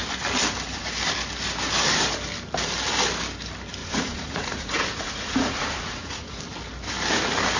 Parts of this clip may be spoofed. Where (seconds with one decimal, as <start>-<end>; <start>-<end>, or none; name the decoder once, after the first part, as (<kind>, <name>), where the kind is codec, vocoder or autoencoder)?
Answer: 3.8-6.4 (vocoder, Vocos)